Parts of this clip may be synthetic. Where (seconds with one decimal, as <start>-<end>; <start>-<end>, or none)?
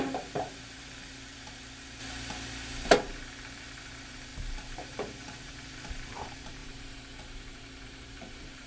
0.0-2.0; 2.9-8.7